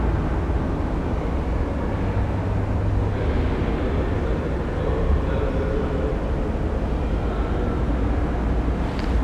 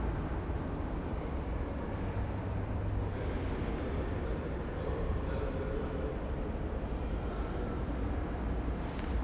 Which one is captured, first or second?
first